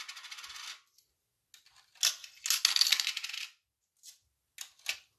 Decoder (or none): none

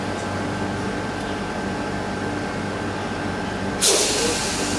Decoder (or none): none